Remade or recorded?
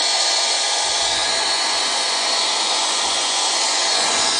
remade